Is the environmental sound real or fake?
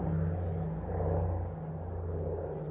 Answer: real